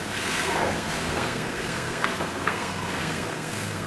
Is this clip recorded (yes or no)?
no